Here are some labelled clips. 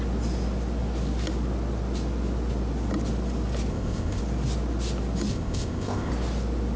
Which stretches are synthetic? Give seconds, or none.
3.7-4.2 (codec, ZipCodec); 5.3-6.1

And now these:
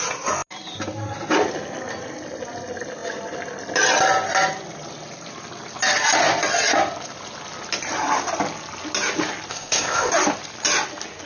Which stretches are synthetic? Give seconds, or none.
9.5-10.1 (codec, ZipCodec)